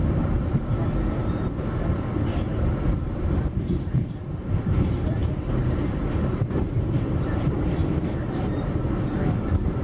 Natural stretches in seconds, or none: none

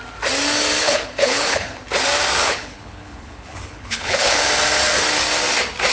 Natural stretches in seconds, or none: 0.0-0.8; 1.8-2.4; 4.4-5.9

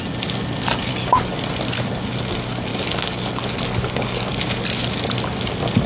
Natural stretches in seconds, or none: 0.0-0.9; 1.4-2.7; 4.3-5.9

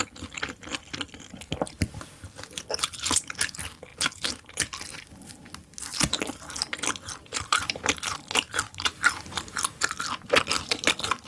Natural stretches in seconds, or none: 0.0-7.3; 9.8-11.3

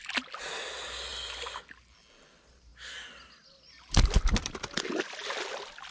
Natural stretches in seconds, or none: 0.0-5.9

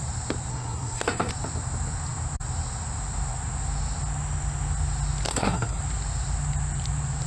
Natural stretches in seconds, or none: 0.0-0.5; 1.3-5.3; 5.8-7.3